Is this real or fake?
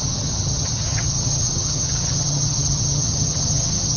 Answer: fake